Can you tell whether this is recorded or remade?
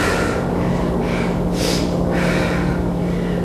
remade